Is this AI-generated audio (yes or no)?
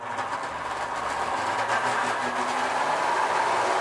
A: no